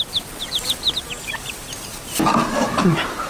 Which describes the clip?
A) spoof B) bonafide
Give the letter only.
A